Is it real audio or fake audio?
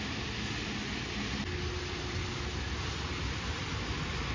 real